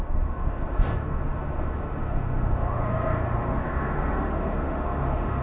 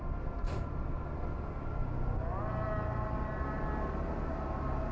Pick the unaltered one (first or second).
second